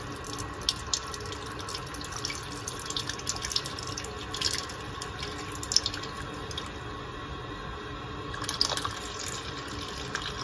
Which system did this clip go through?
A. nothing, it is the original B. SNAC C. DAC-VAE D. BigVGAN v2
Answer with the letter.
A